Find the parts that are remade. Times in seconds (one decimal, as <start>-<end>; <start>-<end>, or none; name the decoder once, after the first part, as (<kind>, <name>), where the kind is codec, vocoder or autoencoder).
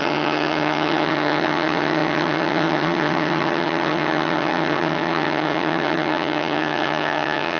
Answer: 0.0-7.6 (vocoder, HiFi-GAN)